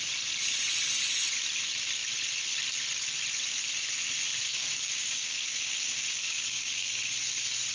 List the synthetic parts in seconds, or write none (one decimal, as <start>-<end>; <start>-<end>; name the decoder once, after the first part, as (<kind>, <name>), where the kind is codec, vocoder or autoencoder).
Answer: 4.5-7.0 (codec, DAC)